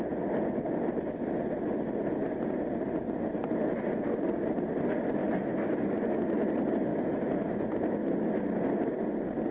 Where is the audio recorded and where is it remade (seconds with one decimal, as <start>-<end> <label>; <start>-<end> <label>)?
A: 0.0-5.2 recorded; 5.2-6.5 remade; 6.5-6.9 recorded; 6.9-8.3 remade; 8.3-9.5 recorded